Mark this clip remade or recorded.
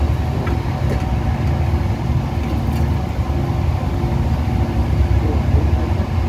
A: recorded